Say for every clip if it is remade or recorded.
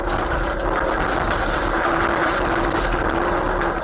recorded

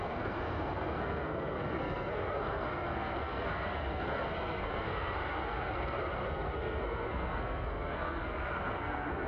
remade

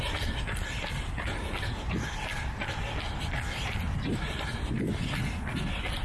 recorded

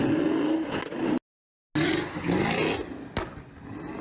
recorded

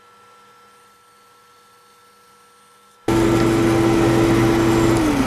recorded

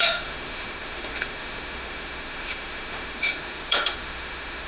remade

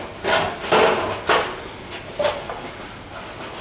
recorded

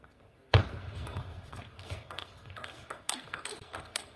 remade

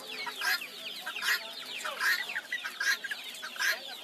recorded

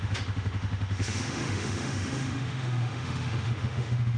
remade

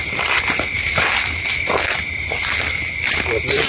recorded